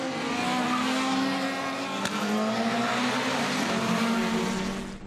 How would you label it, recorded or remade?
recorded